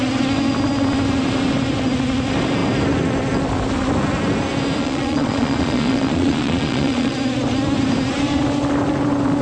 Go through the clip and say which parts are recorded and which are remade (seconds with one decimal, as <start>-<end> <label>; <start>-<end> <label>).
0.0-4.8 recorded; 4.8-7.2 remade; 7.2-9.4 recorded